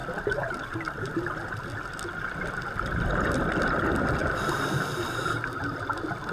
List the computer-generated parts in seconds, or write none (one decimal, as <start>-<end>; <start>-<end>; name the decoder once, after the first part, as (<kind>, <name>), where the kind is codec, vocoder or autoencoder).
0.0-1.7 (vocoder, BigVGAN v2); 4.2-4.8